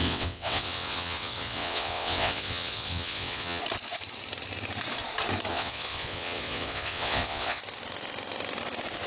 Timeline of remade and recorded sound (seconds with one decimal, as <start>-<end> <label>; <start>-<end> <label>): 0.0-3.6 remade; 3.6-5.5 recorded; 5.5-7.6 remade; 7.6-9.1 recorded